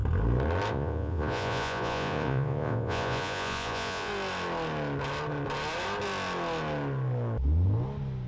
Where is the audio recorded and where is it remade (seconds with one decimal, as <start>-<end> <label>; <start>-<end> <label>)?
0.0-0.7 recorded; 0.7-4.1 remade; 4.1-8.3 recorded